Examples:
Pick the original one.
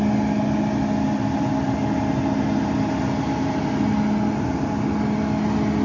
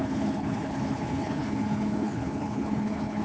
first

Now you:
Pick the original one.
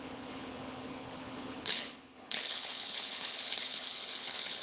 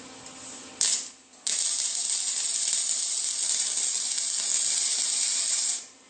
second